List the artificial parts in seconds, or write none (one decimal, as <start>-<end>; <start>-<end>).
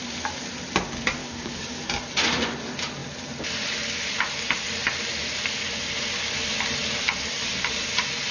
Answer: 1.2-1.8